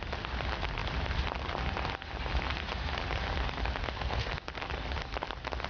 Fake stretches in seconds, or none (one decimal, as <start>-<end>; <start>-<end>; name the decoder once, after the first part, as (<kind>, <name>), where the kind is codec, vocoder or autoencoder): 3.8-4.3 (codec, SNAC)